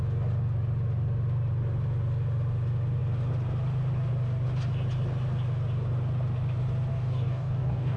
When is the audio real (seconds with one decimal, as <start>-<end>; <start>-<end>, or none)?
0.0-6.9